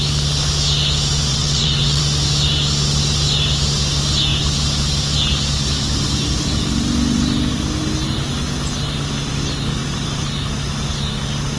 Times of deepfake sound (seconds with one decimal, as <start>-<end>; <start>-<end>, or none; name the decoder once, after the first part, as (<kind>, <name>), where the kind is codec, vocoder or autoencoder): 1.3-2.0 (vocoder, WaveNeXt)